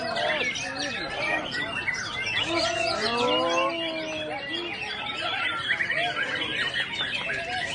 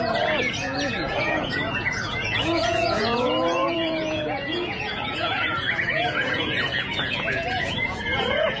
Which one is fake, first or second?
second